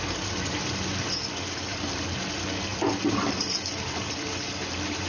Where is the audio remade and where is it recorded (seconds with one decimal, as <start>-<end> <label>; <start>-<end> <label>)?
0.0-5.1 recorded